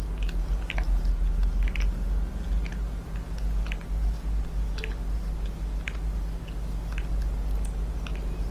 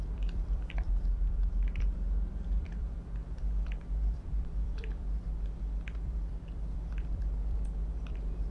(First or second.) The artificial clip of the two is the second